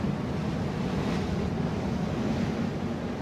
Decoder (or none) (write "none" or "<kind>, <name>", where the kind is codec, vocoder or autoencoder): none